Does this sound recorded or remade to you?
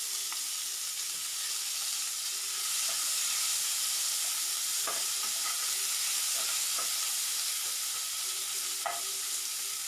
recorded